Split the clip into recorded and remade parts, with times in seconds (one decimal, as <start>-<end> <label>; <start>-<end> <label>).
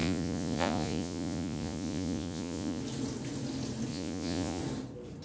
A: 0.0-2.8 remade; 2.8-3.9 recorded; 3.9-4.6 remade; 4.6-5.2 recorded